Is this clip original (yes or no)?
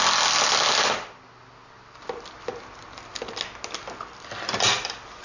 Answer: yes